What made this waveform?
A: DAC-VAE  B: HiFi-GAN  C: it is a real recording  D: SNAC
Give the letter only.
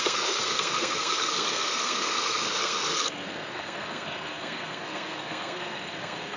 D